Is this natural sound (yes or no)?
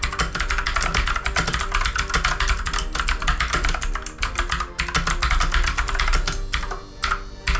yes